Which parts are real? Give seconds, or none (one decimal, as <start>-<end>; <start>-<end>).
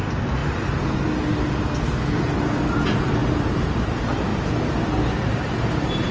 0.0-3.2; 3.8-4.3; 5.3-6.1